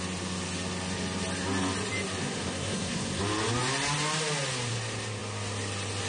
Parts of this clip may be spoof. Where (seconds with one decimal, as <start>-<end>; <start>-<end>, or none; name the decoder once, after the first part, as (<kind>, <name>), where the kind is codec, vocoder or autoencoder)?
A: 2.2-3.2 (codec, SNAC)

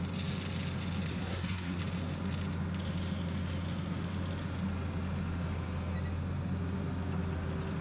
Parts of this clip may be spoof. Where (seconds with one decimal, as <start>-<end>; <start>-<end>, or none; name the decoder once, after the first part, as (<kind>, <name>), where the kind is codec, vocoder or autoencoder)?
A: 1.1-1.8 (codec, SNAC)